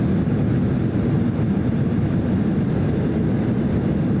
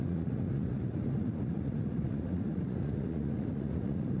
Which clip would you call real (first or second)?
first